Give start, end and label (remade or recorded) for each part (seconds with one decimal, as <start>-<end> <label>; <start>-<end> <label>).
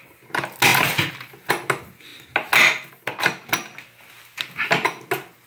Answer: 0.0-5.5 recorded